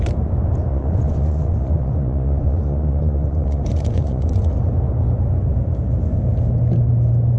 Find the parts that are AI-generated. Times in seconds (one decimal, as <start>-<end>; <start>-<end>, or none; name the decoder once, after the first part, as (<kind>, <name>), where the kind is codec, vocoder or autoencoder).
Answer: 0.7-4.5 (vocoder, Vocos)